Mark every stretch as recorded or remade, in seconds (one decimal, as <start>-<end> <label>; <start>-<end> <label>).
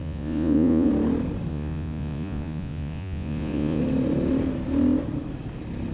0.0-0.9 remade; 0.9-1.5 recorded; 1.5-3.8 remade; 3.8-5.9 recorded